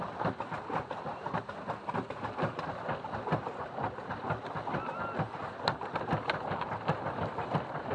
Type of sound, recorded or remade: recorded